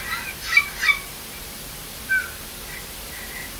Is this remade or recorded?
remade